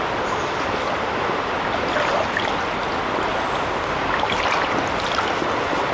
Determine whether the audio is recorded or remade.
recorded